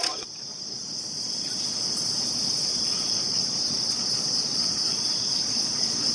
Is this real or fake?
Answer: fake